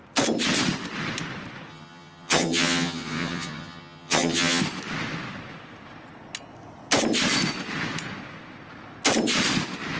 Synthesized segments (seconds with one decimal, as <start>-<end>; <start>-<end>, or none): 1.7-4.6